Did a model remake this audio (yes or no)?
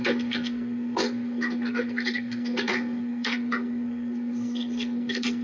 yes